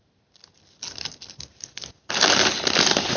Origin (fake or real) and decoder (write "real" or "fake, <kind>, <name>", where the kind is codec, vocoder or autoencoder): real